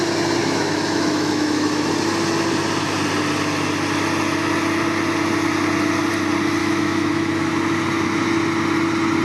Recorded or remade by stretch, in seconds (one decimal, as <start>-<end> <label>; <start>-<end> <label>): 0.0-0.4 recorded; 0.4-1.9 remade; 1.9-6.6 recorded; 6.6-7.5 remade; 7.5-9.2 recorded